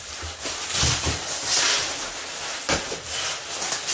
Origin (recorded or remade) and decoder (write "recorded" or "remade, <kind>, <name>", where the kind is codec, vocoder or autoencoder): recorded